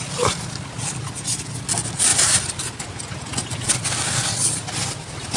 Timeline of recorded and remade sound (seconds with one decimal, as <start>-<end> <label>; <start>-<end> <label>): 0.0-5.4 recorded